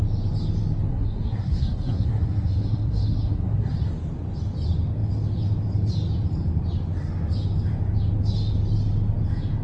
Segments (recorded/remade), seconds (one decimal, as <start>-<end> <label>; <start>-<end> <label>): 0.0-0.9 recorded; 0.9-3.7 remade; 3.7-9.6 recorded